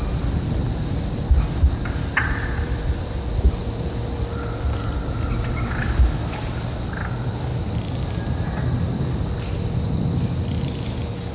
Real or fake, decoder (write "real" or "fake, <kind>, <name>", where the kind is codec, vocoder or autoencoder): real